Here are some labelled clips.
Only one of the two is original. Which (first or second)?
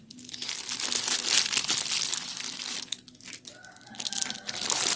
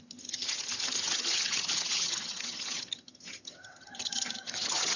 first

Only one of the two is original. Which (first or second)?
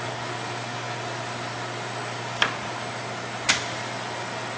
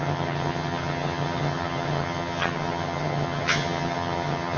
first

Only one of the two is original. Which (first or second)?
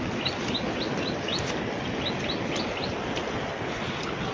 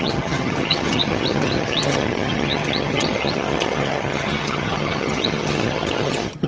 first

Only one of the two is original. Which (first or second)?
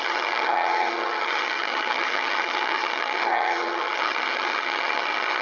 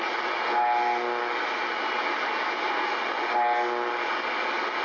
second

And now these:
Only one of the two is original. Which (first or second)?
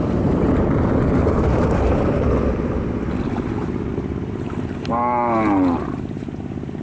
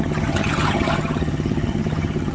first